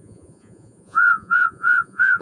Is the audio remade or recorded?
remade